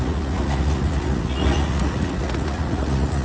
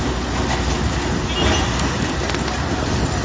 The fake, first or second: first